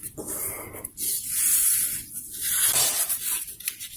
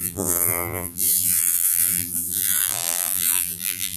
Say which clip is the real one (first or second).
first